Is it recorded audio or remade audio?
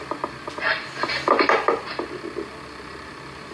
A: recorded